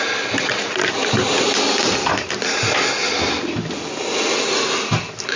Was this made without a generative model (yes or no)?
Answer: yes